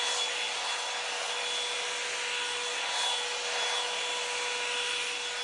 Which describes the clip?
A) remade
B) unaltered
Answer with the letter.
B